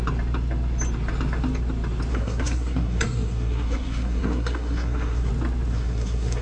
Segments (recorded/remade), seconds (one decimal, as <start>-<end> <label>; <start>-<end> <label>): 0.0-2.1 recorded; 2.1-5.3 remade; 5.3-5.7 recorded; 5.7-6.4 remade